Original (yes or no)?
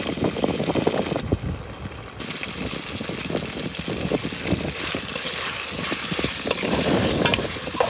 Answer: yes